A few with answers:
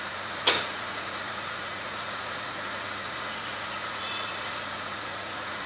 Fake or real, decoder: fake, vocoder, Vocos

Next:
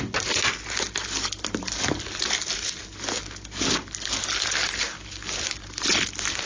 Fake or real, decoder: real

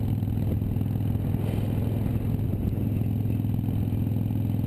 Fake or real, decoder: real